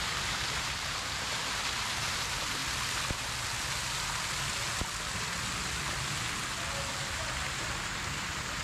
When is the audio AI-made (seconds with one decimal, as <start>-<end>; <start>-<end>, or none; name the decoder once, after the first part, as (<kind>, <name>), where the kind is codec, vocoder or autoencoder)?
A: 0.0-2.6 (vocoder, BigVGAN v2); 7.0-8.6